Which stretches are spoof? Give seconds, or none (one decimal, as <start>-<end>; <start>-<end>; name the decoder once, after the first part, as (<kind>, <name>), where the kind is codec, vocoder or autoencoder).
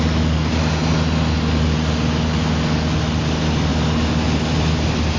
none